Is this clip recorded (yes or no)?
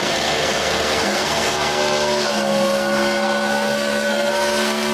no